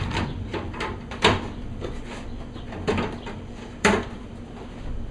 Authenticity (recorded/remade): remade